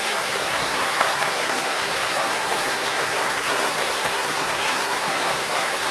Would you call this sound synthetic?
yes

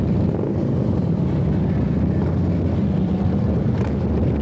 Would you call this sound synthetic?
no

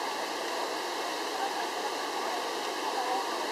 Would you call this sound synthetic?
no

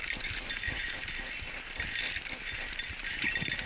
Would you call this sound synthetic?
no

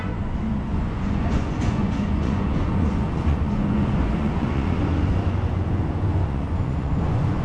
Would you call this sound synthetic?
yes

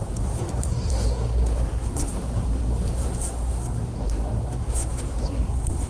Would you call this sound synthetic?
yes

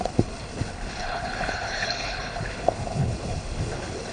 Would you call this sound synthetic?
yes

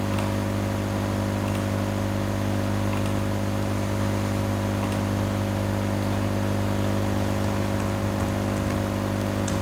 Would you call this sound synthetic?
no